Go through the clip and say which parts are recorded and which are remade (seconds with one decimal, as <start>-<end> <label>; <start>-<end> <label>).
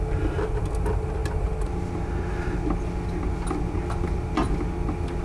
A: 0.0-5.2 recorded